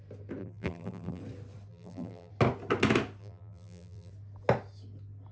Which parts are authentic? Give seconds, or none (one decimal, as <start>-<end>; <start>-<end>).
0.0-0.4; 1.2-1.7; 2.3-3.2; 4.1-5.3